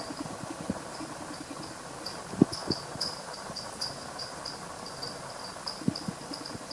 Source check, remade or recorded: recorded